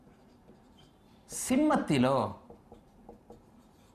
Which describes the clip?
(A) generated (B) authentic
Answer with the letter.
A